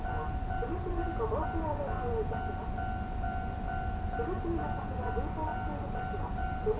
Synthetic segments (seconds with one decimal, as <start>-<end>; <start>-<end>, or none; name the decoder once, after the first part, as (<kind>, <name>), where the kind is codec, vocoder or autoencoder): none